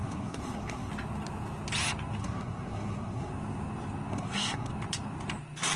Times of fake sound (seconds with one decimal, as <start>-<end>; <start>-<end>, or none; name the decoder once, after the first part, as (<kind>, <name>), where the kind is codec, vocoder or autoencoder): 0.0-0.9 (codec, SNAC); 2.2-3.3; 4.1-4.7